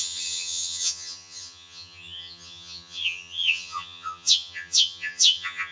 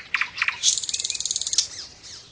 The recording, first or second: second